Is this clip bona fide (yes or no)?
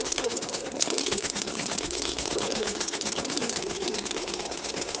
no